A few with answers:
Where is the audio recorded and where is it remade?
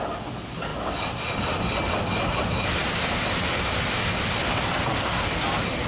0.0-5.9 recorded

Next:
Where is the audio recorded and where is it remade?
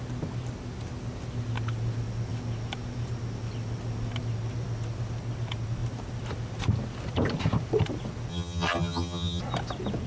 0.0-8.3 recorded; 8.3-9.4 remade; 9.4-10.1 recorded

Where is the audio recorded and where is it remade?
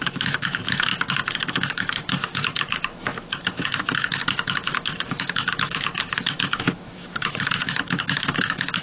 0.0-0.9 remade; 0.9-1.5 recorded; 1.5-8.8 remade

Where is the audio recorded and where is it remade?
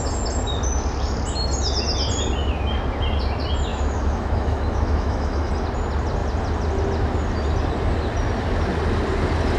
0.0-3.7 recorded; 3.7-5.5 remade; 5.5-9.6 recorded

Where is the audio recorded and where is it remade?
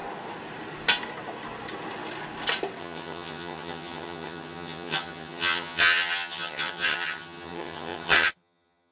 0.0-2.8 recorded; 2.8-8.9 remade